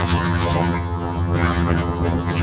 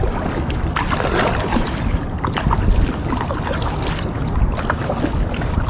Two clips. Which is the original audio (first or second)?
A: second